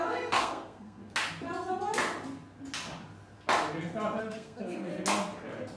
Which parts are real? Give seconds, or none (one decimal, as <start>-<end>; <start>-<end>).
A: 1.0-4.2; 4.9-5.8